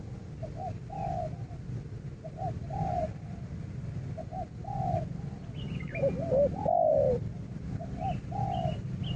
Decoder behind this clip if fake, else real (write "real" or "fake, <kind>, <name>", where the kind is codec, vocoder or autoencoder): real